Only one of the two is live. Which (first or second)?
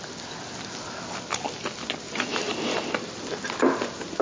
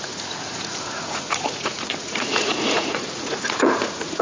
first